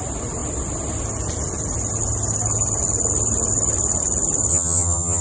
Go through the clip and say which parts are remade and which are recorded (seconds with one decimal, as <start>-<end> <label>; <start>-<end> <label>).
0.0-4.5 recorded; 4.5-5.2 remade